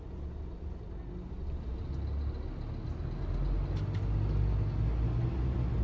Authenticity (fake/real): real